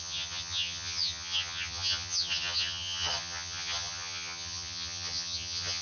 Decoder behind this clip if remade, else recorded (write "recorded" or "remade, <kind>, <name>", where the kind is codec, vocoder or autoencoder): remade, vocoder, HiFi-GAN